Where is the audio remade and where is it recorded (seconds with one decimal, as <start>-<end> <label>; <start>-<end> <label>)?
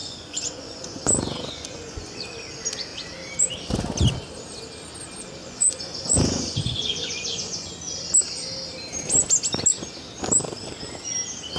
0.0-2.2 remade; 2.2-5.4 recorded; 5.4-7.7 remade; 7.7-11.6 recorded